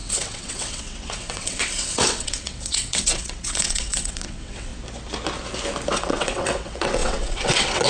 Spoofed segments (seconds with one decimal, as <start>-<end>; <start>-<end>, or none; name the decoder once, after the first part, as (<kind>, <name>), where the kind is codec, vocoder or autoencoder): 0.0-4.7 (vocoder, WaveNeXt); 5.9-7.9